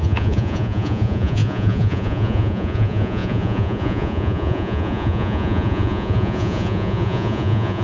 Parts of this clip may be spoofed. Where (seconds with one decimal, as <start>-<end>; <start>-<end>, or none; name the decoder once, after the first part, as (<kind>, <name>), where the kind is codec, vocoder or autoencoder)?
0.0-7.8 (vocoder, Vocos)